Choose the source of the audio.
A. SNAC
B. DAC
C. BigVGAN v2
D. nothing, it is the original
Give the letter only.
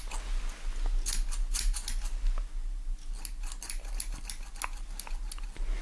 D